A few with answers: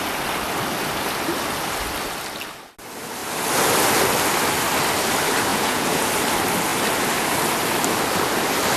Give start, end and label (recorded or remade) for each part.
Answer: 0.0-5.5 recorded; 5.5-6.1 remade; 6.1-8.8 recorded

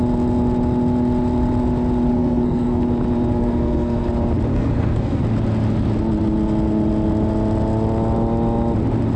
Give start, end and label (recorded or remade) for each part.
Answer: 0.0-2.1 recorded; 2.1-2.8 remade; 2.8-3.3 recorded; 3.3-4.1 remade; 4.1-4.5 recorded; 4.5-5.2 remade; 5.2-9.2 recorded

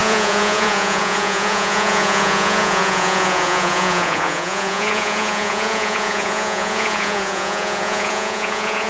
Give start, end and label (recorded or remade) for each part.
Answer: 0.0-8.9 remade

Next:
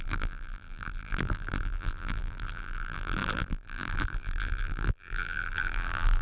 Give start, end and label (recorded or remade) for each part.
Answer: 0.0-6.2 remade

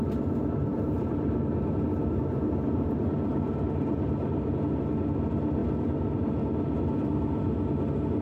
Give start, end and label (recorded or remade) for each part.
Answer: 0.0-0.7 recorded; 0.7-4.5 remade; 4.5-8.2 recorded

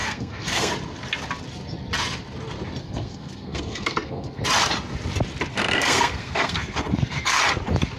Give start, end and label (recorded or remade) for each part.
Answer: 0.0-0.7 remade; 0.7-2.8 recorded; 2.8-4.4 remade; 4.4-5.5 recorded; 5.5-7.4 remade; 7.4-8.0 recorded

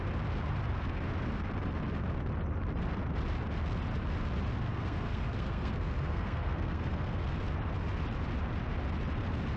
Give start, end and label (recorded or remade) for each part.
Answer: 0.0-4.7 recorded; 4.7-7.2 remade; 7.2-9.6 recorded